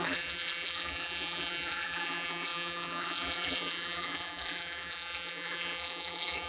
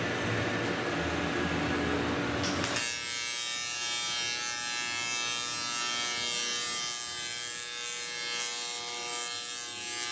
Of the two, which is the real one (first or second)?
second